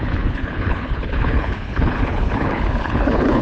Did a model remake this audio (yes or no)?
yes